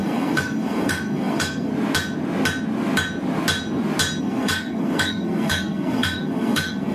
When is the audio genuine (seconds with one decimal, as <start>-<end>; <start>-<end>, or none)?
1.7-4.2